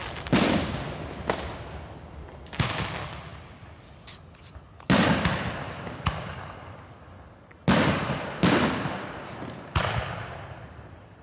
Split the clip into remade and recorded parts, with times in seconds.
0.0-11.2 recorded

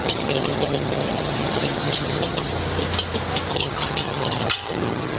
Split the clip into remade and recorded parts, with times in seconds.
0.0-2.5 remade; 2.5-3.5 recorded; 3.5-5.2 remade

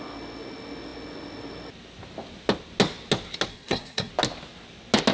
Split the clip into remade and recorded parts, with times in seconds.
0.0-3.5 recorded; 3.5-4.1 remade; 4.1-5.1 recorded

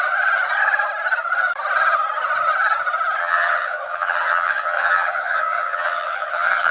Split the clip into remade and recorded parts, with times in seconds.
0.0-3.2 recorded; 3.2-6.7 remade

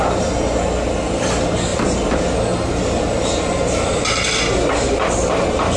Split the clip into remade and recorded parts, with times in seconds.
0.0-5.8 recorded